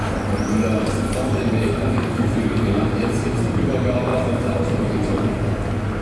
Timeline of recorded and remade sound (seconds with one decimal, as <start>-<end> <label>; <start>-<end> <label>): 0.0-1.1 recorded; 1.1-3.0 remade; 3.0-4.1 recorded; 4.1-5.5 remade; 5.5-6.0 recorded